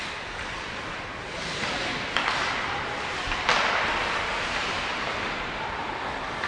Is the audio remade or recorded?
remade